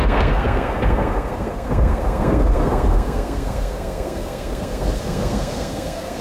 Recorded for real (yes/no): no